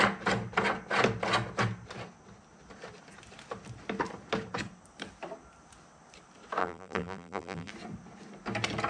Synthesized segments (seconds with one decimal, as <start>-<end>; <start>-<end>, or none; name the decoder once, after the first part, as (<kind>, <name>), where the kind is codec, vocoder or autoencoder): 6.6-7.7 (vocoder, BigVGAN v2)